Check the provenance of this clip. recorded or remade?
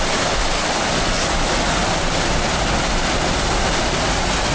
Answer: recorded